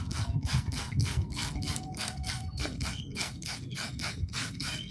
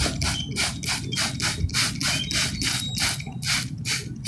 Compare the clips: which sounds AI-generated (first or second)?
first